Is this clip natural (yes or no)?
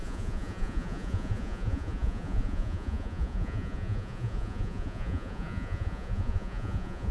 no